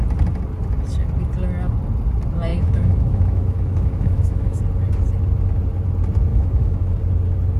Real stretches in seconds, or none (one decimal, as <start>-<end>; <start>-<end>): 0.0-2.5; 4.6-6.3; 7.0-7.6